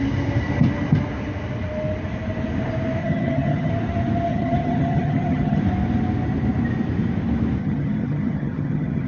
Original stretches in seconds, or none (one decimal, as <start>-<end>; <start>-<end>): 0.0-3.0; 3.7-4.3; 5.6-7.6